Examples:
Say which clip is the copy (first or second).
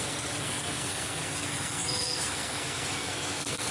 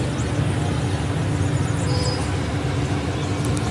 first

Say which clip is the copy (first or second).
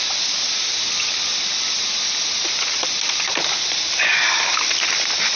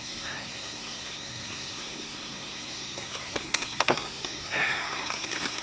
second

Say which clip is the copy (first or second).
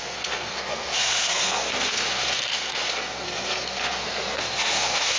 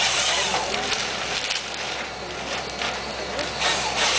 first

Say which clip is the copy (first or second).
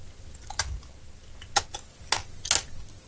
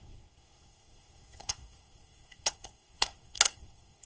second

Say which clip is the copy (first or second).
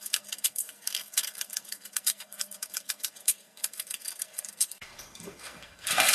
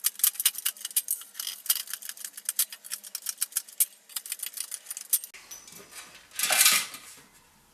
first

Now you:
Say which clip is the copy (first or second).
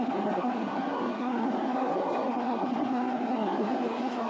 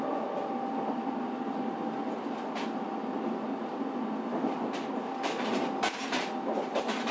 first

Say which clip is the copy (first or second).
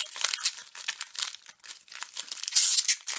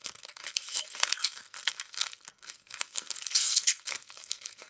second